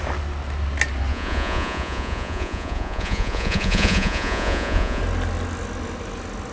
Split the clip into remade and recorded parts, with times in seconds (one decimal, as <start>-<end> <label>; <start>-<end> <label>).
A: 0.0-1.1 recorded; 1.1-5.0 remade; 5.0-6.5 recorded